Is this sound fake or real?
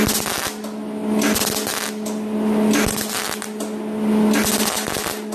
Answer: real